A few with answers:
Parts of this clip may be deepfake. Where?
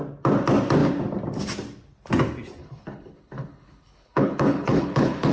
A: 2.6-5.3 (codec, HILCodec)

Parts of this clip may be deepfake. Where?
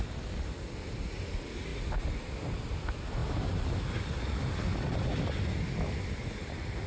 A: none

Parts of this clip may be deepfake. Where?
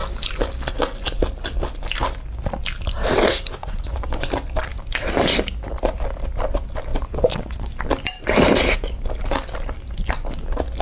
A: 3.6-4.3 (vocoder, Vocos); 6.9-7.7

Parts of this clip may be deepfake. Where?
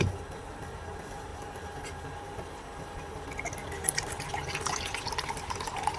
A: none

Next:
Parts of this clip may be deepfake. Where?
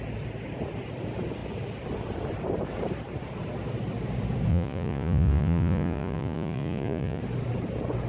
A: 4.5-7.2 (vocoder, Vocos)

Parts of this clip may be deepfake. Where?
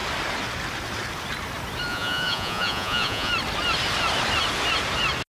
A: 1.9-3.3 (vocoder, Vocos)